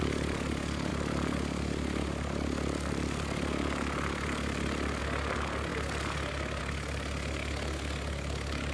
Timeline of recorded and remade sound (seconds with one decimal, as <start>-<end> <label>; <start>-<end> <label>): 0.0-8.7 recorded